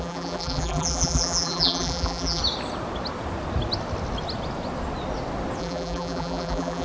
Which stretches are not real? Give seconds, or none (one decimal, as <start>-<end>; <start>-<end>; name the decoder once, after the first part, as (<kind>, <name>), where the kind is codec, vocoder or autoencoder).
0.0-2.4 (vocoder, BigVGAN v2); 5.6-6.8